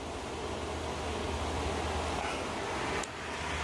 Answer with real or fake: real